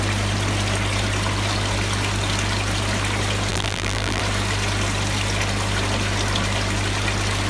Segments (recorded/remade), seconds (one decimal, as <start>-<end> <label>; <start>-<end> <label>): 0.0-3.5 recorded; 3.5-4.2 remade; 4.2-7.5 recorded